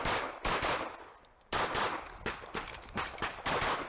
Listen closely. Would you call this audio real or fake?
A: real